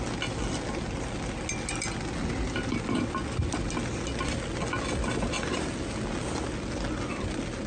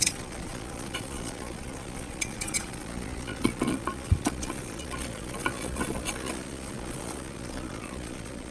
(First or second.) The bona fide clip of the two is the first